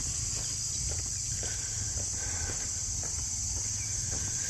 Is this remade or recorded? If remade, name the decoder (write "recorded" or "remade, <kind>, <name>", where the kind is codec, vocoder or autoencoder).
recorded